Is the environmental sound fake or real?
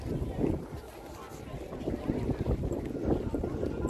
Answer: real